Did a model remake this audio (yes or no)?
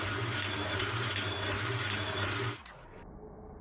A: no